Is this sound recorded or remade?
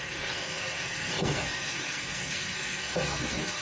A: remade